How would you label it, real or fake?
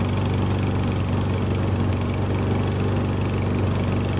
real